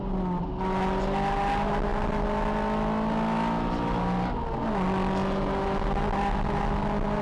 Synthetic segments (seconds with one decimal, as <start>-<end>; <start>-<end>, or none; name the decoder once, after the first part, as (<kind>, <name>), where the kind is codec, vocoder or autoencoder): none